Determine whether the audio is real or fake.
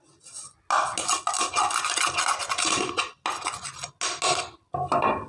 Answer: real